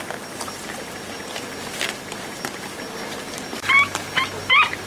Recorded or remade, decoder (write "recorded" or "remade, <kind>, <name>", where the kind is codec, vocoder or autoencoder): recorded